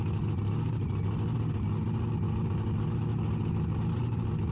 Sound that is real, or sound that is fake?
real